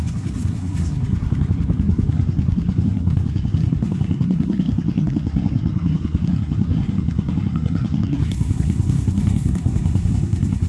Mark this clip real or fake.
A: fake